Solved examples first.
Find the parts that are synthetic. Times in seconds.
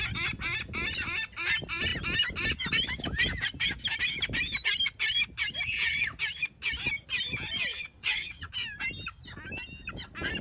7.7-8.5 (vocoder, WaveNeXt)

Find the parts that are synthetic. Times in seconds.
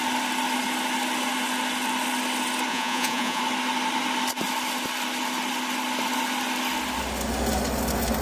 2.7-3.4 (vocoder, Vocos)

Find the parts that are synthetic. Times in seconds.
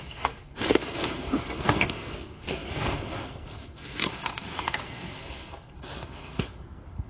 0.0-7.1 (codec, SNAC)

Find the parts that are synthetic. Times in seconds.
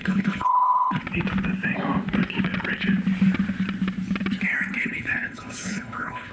0.0-1.0 (codec, HILCodec); 4.8-6.3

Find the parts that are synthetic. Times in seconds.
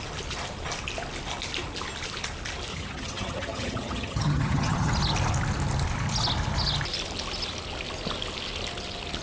2.7-4.9 (vocoder, HiFi-GAN)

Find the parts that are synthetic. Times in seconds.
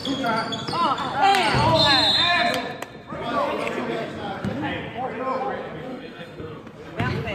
5.9-6.6 (codec, SNAC)